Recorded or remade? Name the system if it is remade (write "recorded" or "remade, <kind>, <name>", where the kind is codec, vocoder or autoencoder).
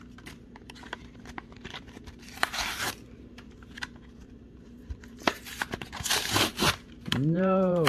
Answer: remade, vocoder, BigVGAN v2